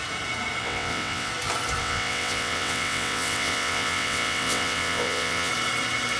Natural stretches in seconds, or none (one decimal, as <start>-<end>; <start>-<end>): 0.0-0.6; 1.3-1.8; 5.5-6.2